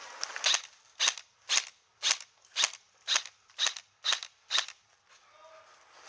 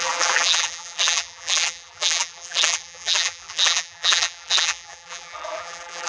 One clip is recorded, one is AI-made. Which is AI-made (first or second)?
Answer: second